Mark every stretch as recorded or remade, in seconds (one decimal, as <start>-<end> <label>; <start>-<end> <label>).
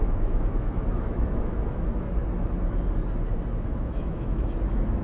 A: 0.0-2.2 remade; 2.2-3.6 recorded; 3.6-5.0 remade